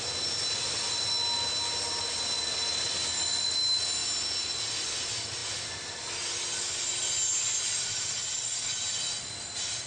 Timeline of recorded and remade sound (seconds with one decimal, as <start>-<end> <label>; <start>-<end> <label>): 0.0-9.9 recorded